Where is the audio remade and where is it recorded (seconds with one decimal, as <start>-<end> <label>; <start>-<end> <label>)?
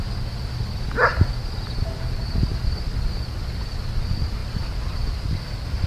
0.0-5.9 recorded